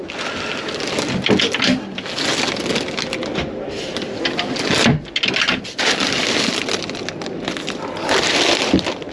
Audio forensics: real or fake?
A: real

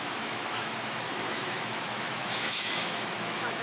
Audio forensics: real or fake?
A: fake